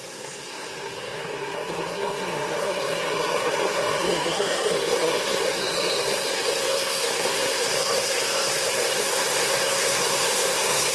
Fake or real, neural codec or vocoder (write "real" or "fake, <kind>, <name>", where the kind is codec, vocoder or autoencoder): fake, codec, SNAC